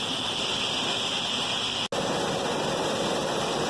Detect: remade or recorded recorded